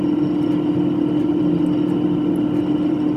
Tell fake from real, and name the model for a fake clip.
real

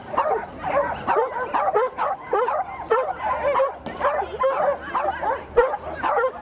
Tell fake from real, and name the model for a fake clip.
real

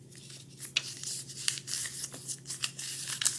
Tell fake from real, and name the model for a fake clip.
real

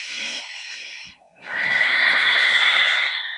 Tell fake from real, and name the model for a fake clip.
fake, codec, SNAC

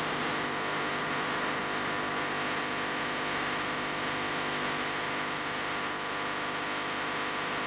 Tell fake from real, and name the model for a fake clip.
real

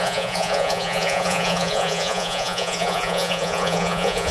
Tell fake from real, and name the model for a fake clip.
fake, vocoder, Vocos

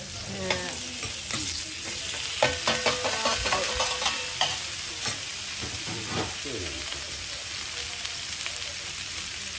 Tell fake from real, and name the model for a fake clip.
real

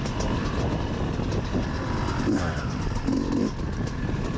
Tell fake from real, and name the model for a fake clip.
fake, vocoder, BigVGAN v2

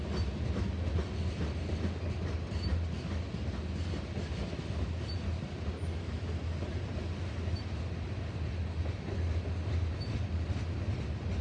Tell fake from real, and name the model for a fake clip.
real